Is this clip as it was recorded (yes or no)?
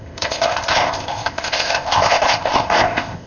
no